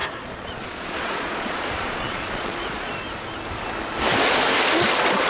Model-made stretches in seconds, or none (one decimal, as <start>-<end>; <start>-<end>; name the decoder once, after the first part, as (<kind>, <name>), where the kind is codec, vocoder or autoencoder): 0.0-2.9 (vocoder, Vocos)